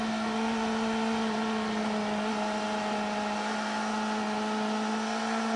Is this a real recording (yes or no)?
yes